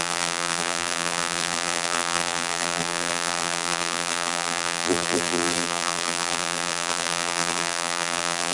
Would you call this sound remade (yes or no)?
yes